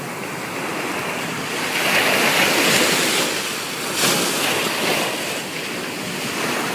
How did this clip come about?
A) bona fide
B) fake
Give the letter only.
A